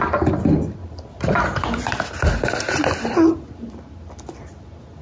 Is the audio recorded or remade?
recorded